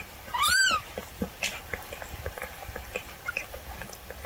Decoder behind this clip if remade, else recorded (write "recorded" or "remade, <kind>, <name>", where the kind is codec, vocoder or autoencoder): remade, vocoder, BigVGAN v2